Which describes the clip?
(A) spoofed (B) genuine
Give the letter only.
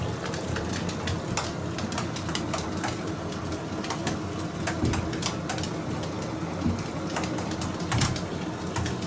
B